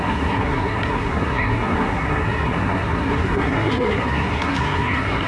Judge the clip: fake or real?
fake